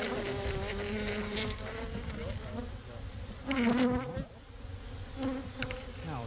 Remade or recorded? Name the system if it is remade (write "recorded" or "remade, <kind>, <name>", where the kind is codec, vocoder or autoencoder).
recorded